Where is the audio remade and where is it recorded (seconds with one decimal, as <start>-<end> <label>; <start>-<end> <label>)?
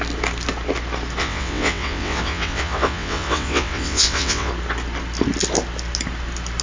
0.0-1.2 recorded; 1.2-4.5 remade; 4.5-6.6 recorded